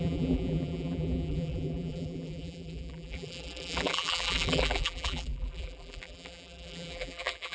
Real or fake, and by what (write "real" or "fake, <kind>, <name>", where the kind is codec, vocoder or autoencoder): fake, vocoder, BigVGAN v2